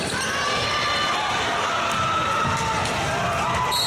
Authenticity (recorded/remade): recorded